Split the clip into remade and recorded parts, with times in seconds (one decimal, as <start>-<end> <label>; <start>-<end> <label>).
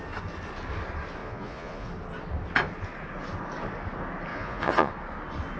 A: 0.0-1.2 recorded; 1.2-1.9 remade; 1.9-4.3 recorded; 4.3-4.9 remade; 4.9-5.6 recorded